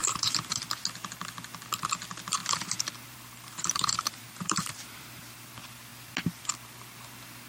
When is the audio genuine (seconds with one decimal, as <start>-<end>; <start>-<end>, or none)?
0.6-2.4; 5.5-7.5